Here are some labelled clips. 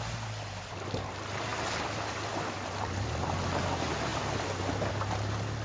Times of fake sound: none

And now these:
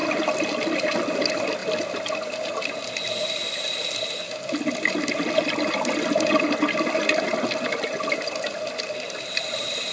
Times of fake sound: none

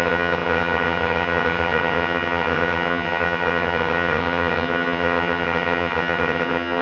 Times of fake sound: 0.0-6.8 (vocoder, HiFi-GAN)

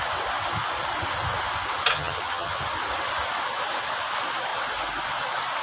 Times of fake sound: 1.9-2.6 (vocoder, HiFi-GAN)

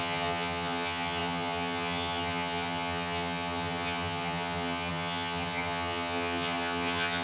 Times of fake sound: 0.0-7.2 (vocoder, HiFi-GAN)

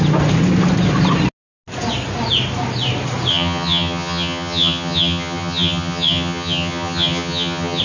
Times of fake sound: 3.3-7.8 (vocoder, HiFi-GAN)

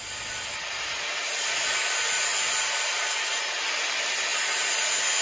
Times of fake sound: none

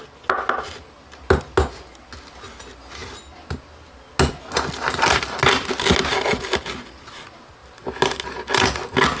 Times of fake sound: none